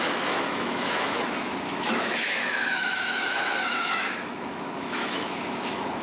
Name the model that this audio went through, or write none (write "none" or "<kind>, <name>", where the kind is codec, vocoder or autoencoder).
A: autoencoder, DAC-VAE